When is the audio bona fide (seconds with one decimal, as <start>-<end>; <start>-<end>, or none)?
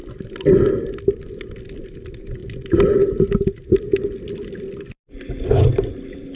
0.0-1.0; 2.4-4.9